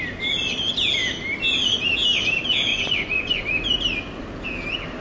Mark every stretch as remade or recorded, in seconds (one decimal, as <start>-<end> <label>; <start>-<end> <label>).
0.0-2.7 recorded; 2.7-3.4 remade; 3.4-5.0 recorded